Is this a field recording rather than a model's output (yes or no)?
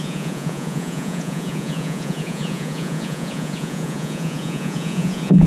no